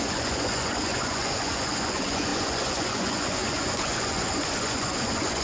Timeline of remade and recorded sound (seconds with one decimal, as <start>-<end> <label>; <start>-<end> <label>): 0.0-5.4 remade

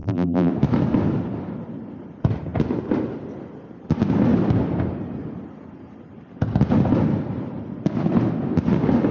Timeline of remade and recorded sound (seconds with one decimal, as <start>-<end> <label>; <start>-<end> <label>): 0.0-0.5 remade; 0.5-9.1 recorded

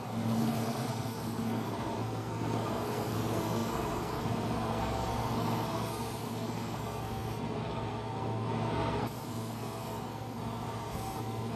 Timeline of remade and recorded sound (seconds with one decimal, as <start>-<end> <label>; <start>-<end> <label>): 0.0-11.6 remade

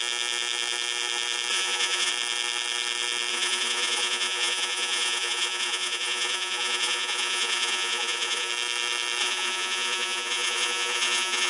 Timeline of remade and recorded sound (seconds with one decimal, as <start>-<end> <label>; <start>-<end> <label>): 0.0-1.5 recorded; 1.5-2.1 remade; 2.1-3.3 recorded; 3.3-8.5 remade; 8.5-9.2 recorded; 9.2-11.5 remade